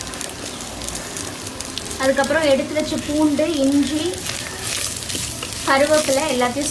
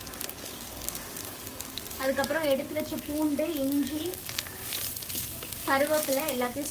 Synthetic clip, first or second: second